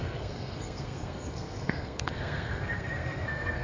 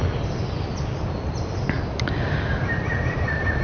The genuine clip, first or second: second